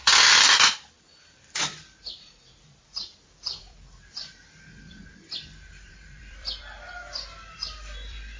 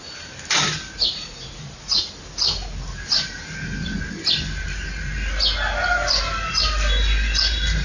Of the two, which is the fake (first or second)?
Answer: first